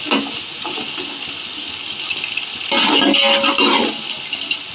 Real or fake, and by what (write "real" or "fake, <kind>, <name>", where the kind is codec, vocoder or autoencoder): real